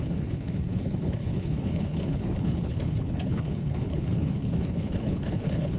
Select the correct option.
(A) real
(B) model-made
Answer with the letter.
B